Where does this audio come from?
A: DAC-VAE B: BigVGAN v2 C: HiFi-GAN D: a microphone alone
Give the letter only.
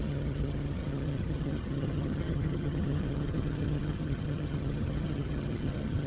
C